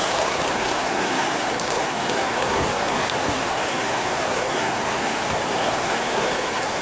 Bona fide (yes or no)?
no